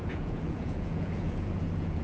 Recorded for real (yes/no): no